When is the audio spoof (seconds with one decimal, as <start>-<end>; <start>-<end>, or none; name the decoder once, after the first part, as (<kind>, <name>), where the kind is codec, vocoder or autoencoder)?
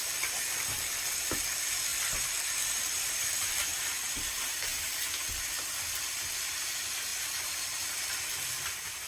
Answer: 1.9-3.5 (vocoder, BigVGAN v2); 7.1-8.2